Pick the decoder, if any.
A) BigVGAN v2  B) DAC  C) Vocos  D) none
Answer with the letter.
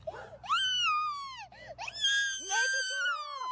D